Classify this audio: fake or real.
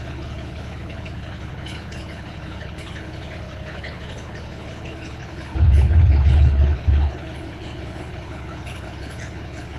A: fake